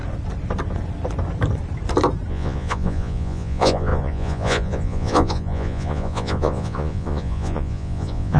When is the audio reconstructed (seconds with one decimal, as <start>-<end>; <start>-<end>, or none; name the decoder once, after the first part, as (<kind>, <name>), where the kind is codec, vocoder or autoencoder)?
2.3-8.4 (vocoder, Vocos)